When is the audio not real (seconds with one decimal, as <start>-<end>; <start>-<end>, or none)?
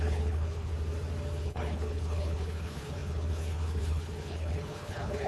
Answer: 0.0-0.7; 1.4-5.3